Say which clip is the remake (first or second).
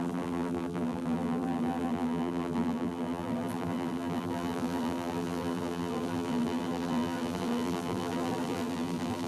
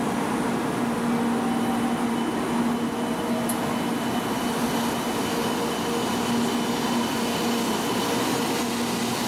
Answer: first